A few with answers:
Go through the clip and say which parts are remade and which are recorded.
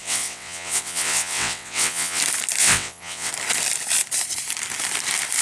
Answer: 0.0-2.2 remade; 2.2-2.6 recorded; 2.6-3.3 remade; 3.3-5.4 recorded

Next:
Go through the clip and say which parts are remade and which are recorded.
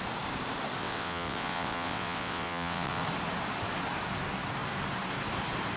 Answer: 0.0-0.8 recorded; 0.8-3.0 remade; 3.0-5.8 recorded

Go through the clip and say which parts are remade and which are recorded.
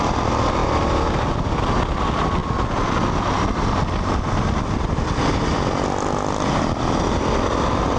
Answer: 0.0-8.0 recorded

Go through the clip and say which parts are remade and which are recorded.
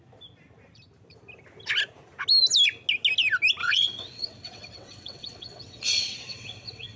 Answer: 0.0-3.6 recorded; 3.6-7.0 remade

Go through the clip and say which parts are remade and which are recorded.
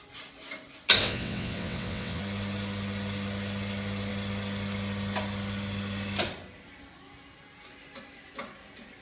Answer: 0.0-1.0 recorded; 1.0-2.2 remade; 2.2-9.0 recorded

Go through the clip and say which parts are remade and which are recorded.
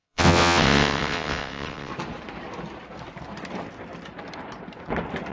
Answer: 0.0-1.9 remade; 1.9-5.3 recorded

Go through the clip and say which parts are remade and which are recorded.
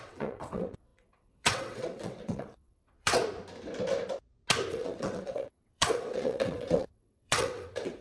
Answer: 0.0-3.2 remade; 3.2-4.7 recorded; 4.7-8.0 remade